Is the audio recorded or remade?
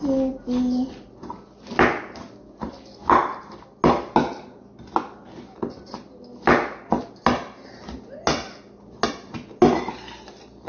recorded